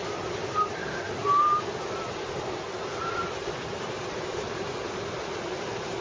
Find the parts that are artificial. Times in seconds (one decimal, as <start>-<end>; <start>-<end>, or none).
none